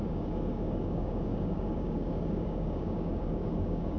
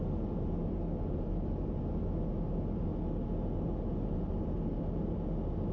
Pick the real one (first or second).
second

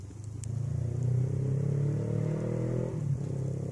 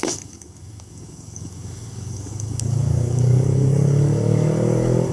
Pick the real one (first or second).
first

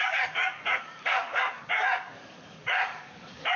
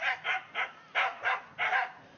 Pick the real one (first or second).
second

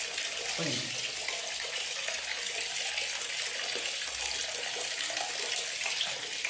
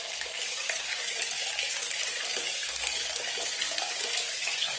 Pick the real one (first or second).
first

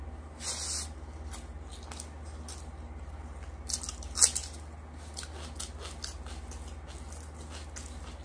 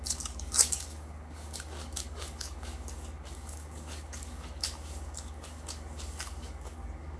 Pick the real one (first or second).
first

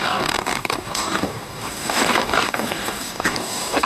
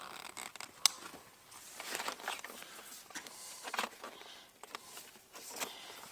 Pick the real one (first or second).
second